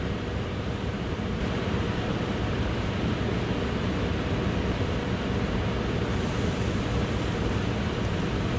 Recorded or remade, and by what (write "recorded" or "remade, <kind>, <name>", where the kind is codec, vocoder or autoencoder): remade, vocoder, BigVGAN v2